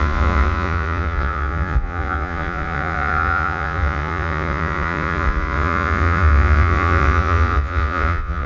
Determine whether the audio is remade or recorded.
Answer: remade